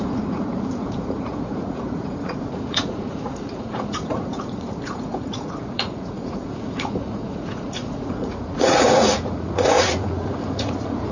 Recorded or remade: remade